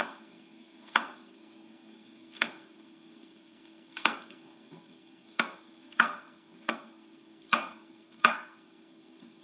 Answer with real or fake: fake